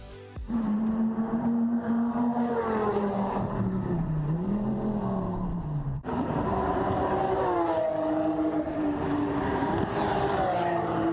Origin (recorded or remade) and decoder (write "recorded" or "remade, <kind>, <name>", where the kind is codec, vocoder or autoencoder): remade, vocoder, BigVGAN v2